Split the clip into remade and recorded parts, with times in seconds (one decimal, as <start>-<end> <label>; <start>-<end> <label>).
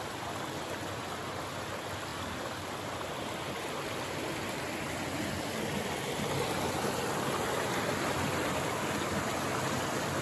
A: 0.0-10.2 recorded